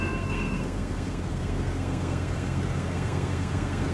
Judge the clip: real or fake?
fake